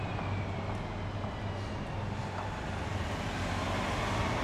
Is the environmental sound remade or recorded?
recorded